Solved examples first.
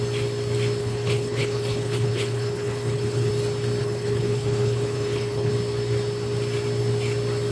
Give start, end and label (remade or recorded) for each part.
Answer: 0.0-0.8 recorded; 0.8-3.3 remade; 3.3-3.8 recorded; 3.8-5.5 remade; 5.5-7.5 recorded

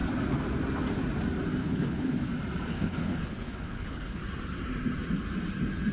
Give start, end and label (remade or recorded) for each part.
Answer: 0.0-1.6 recorded; 1.6-2.2 remade; 2.2-2.7 recorded; 2.7-4.2 remade; 4.2-5.9 recorded